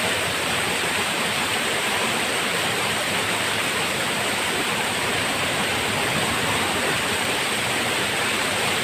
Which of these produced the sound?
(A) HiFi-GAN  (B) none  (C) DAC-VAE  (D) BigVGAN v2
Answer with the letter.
D